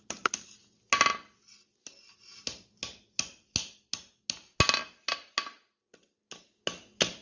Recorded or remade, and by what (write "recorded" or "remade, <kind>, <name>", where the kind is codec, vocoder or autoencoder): recorded